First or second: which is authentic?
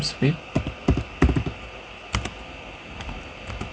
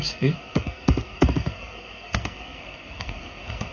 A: first